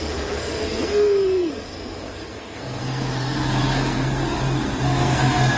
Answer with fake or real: fake